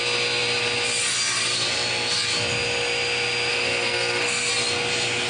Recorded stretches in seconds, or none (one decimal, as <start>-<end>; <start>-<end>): 0.0-3.5; 4.5-5.3